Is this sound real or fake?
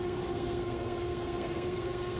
fake